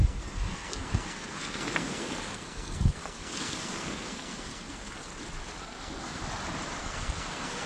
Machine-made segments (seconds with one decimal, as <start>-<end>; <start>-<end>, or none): 0.0-5.1; 5.6-6.2; 6.8-7.7